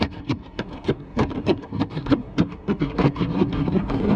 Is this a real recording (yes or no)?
no